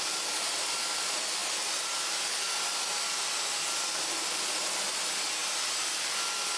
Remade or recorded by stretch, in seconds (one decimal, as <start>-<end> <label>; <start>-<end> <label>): 0.0-6.6 recorded